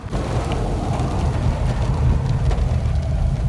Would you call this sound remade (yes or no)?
no